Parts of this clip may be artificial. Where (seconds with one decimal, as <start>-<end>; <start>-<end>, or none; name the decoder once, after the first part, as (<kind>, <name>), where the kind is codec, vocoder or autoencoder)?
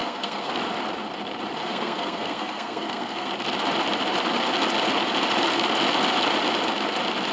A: 0.0-0.5 (codec, SNAC); 1.6-3.3